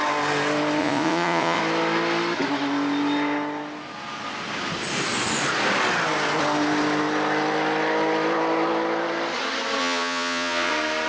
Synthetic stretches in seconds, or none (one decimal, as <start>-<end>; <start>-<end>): 0.8-1.6; 9.8-10.7